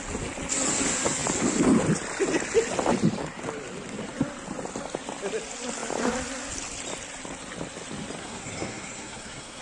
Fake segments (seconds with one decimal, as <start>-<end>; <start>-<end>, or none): 8.2-9.6